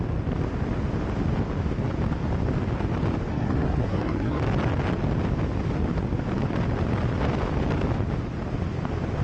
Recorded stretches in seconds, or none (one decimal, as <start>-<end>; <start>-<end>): 0.0-3.3; 4.4-9.2